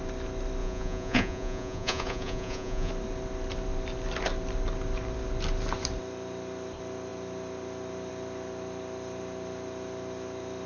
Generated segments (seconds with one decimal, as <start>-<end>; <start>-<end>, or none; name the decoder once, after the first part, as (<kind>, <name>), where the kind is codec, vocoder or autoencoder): 0.6-2.9 (vocoder, Vocos)